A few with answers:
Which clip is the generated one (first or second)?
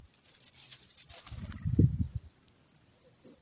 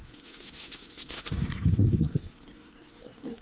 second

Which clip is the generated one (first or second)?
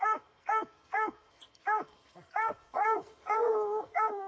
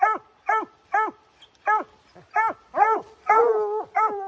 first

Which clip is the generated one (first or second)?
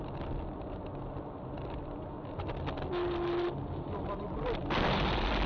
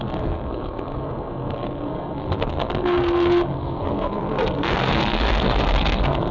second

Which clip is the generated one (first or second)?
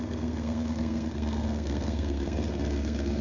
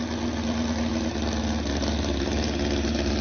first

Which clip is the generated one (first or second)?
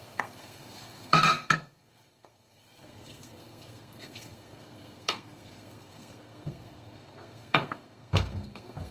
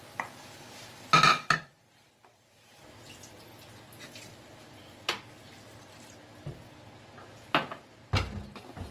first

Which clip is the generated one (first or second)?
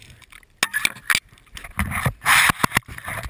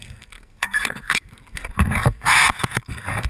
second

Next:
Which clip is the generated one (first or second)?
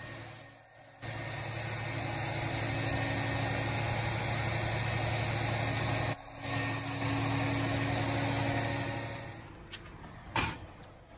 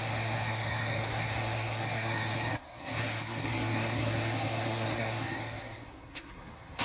second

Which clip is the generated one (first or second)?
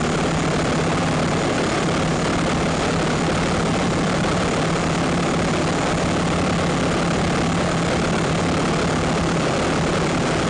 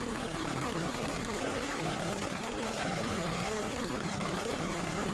second